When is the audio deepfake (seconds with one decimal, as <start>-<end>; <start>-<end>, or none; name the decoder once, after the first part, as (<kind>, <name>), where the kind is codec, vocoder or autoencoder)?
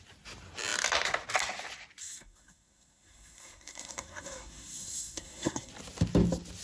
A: 2.0-5.7 (codec, SNAC)